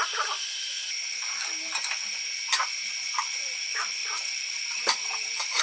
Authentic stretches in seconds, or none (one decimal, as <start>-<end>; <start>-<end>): 0.0-0.8; 3.6-4.0

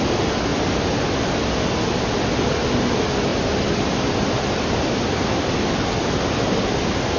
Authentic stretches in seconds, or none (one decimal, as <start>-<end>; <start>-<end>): 0.0-0.5; 1.4-3.3; 5.5-7.2

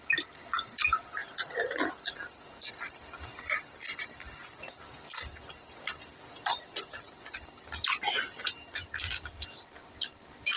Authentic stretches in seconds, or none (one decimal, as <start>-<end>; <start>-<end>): 0.0-1.2; 2.1-4.4; 8.4-10.6

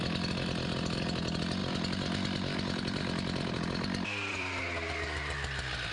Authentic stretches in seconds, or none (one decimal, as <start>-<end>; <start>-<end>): 0.0-1.6; 4.6-5.9

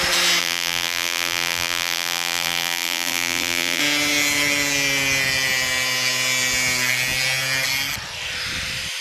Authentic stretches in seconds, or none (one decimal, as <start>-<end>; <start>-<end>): 0.0-0.4; 3.8-9.0

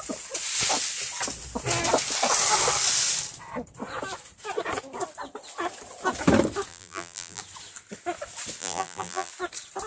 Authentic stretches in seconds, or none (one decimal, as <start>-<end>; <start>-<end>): 0.0-6.7; 7.4-8.6; 9.3-9.9